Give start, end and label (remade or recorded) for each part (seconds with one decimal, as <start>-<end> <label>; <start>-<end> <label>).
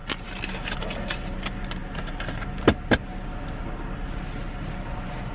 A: 0.0-5.3 recorded